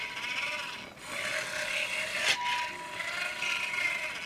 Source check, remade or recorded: recorded